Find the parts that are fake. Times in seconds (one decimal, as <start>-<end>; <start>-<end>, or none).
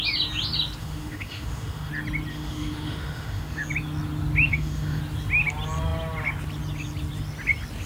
0.8-1.9; 2.3-3.6; 4.5-5.0